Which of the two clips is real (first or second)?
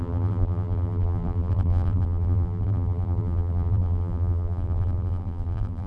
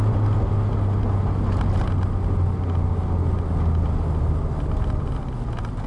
second